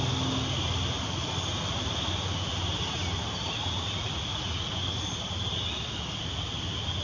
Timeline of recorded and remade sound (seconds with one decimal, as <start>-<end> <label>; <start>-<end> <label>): 0.0-3.6 recorded; 3.6-4.7 remade; 4.7-7.0 recorded